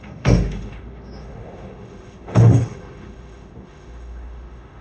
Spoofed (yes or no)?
yes